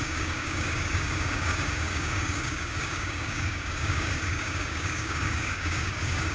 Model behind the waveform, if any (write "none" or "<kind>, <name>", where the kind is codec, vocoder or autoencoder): codec, DAC